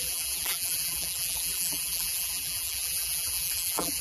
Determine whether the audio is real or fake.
fake